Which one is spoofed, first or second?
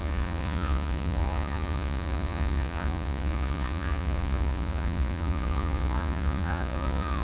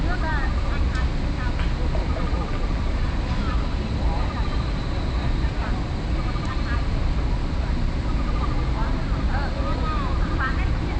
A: first